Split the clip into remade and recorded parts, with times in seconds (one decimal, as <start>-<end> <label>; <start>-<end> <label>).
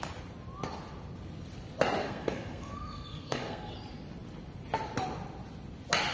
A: 0.0-2.0 recorded; 2.0-3.7 remade; 3.7-6.1 recorded